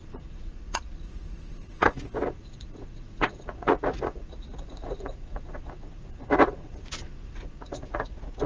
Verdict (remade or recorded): remade